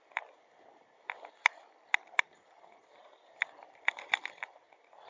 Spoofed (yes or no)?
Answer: no